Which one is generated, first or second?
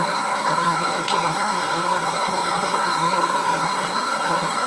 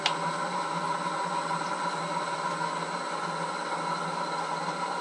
first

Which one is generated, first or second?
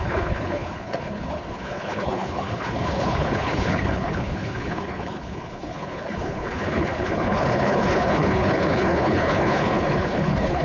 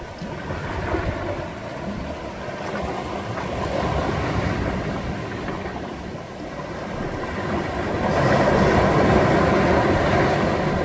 first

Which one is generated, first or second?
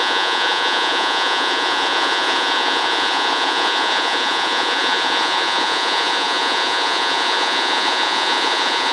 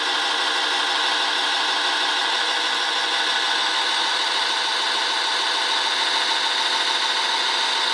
first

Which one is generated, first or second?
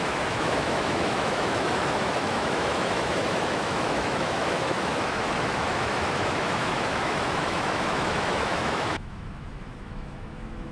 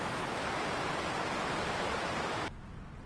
first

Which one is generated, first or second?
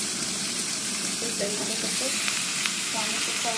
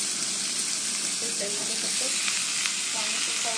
first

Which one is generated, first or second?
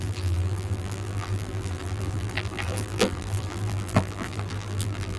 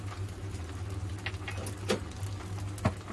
first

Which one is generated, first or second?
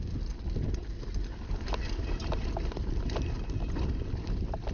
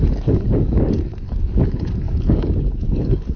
second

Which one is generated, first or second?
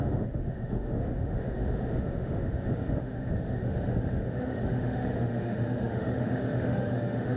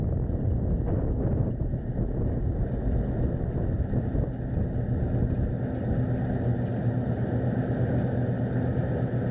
first